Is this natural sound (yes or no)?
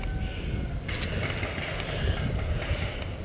yes